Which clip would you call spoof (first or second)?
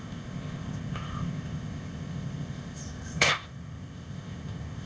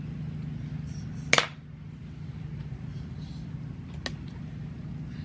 first